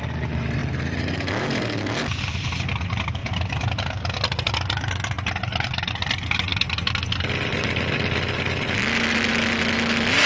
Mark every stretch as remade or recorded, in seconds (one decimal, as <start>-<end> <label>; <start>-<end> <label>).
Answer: 0.0-10.3 recorded